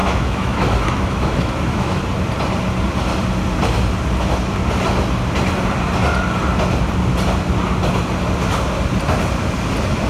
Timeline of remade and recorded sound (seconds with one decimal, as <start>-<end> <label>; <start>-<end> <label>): 0.0-2.0 remade; 2.0-10.1 recorded

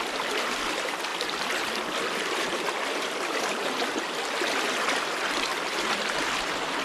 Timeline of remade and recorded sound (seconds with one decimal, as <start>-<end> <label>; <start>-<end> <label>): 0.0-6.8 recorded

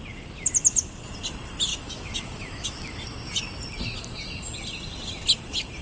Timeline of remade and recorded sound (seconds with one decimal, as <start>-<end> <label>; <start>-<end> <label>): 0.0-1.7 recorded; 1.7-3.3 remade; 3.3-5.8 recorded

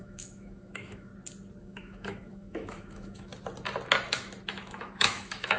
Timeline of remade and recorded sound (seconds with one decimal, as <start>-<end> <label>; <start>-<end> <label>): 0.0-1.1 remade; 1.1-1.6 recorded; 1.6-3.3 remade; 3.3-4.5 recorded; 4.5-5.6 remade

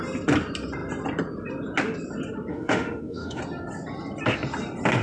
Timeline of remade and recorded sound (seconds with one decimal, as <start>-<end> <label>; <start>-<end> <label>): 0.0-2.5 recorded; 2.5-3.4 remade; 3.4-5.0 recorded